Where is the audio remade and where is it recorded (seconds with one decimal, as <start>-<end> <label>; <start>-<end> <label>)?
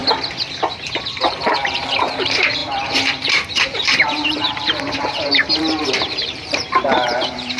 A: 0.0-1.1 recorded; 1.1-7.6 remade